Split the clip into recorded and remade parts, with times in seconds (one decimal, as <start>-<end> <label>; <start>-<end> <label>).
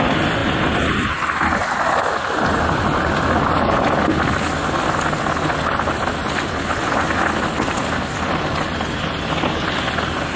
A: 0.0-10.4 recorded